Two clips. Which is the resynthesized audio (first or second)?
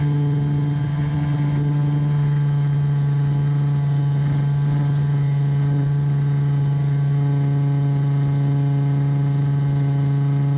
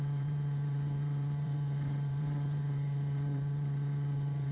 second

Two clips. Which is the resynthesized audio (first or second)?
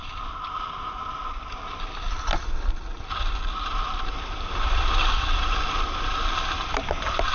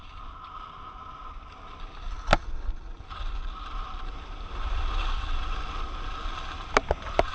first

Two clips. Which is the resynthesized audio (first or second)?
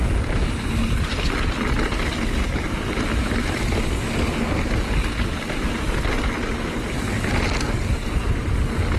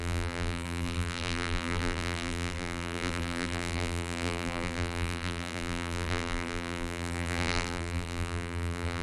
second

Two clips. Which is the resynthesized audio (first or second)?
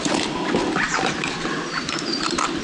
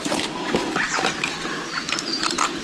first